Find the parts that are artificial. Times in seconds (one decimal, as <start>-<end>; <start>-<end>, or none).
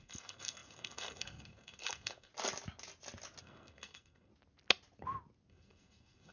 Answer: 0.0-2.3; 3.4-4.3; 5.5-6.3